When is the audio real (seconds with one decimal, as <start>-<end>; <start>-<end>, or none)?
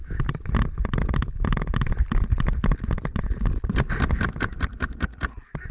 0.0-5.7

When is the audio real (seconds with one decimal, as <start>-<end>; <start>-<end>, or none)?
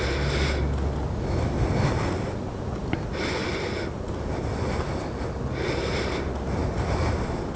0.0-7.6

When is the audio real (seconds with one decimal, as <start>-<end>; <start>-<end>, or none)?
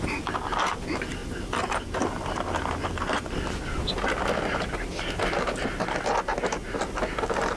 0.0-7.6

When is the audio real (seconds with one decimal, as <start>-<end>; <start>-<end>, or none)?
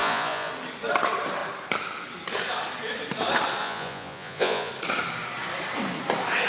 0.5-3.6; 4.7-6.5